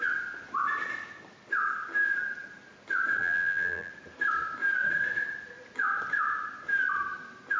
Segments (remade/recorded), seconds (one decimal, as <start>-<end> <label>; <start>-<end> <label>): 0.0-3.2 recorded; 3.2-3.9 remade; 3.9-7.6 recorded